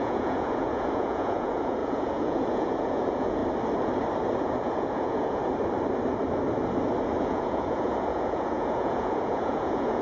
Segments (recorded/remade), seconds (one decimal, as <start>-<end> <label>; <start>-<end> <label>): 0.0-3.4 remade; 3.4-4.4 recorded; 4.4-5.4 remade; 5.4-7.2 recorded; 7.2-10.0 remade